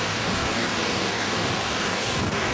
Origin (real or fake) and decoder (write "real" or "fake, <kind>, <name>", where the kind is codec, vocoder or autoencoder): fake, codec, DAC